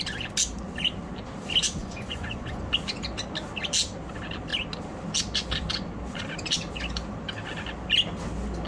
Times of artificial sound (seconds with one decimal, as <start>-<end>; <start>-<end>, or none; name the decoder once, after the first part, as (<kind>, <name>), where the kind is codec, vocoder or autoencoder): 1.8-2.6 (vocoder, Vocos)